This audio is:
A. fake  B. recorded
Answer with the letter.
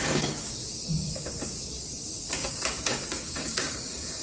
A